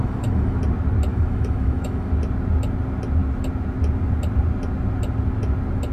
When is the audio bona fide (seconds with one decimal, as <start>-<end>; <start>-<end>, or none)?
0.6-1.1; 2.1-5.9